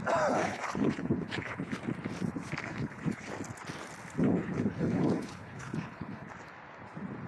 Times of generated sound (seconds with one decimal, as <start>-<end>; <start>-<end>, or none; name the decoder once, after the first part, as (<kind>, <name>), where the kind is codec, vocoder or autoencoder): 0.4-1.8 (codec, HILCodec); 2.6-3.3; 4.2-6.3